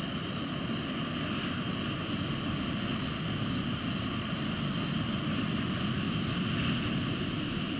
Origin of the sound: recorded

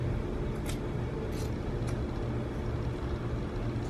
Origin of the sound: recorded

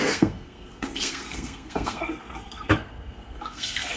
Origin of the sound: remade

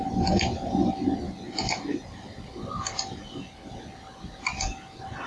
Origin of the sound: recorded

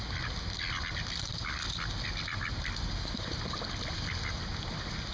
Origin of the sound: recorded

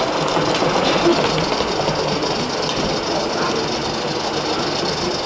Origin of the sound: recorded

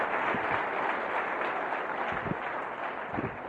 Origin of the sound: recorded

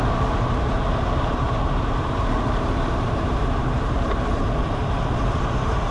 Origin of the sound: remade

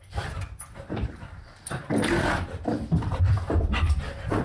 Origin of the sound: remade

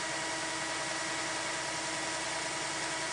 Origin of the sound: recorded